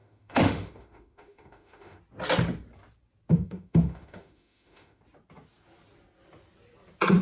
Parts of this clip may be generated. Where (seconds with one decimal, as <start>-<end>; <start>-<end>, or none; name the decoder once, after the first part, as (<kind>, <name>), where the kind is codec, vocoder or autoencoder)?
0.0-2.0 (autoencoder, DAC-VAE); 3.3-5.0